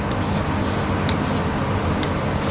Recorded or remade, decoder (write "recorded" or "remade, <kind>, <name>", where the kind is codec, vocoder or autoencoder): recorded